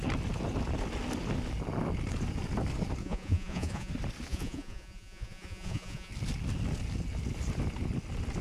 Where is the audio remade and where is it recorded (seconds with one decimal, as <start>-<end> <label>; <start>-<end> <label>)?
0.0-3.0 recorded; 3.0-3.9 remade; 3.9-4.3 recorded; 4.3-6.1 remade; 6.1-8.4 recorded

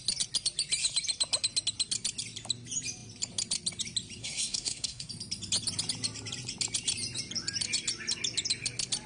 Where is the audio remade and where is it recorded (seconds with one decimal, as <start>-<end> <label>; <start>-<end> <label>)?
0.0-4.2 recorded; 4.2-5.1 remade; 5.1-9.1 recorded

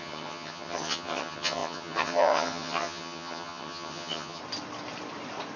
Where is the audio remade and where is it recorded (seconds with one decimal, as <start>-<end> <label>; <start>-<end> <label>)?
0.0-4.4 remade; 4.4-5.6 recorded

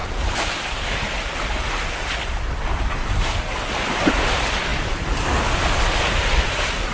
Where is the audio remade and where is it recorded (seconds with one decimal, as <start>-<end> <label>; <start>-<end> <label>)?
0.0-6.9 recorded

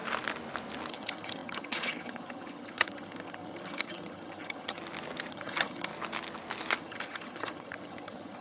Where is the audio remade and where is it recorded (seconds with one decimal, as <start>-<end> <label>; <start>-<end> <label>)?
0.0-0.9 recorded; 0.9-4.8 remade; 4.8-5.3 recorded; 5.3-5.9 remade; 5.9-6.8 recorded; 6.8-8.4 remade

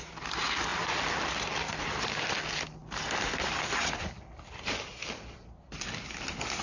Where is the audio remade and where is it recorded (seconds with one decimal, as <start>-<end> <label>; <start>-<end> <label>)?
0.0-6.6 recorded

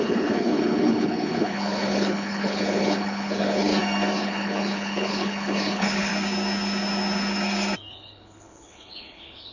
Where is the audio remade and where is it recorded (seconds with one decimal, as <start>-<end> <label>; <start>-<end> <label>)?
0.0-3.7 remade; 3.7-4.2 recorded; 4.2-6.1 remade; 6.1-7.9 recorded; 7.9-9.5 remade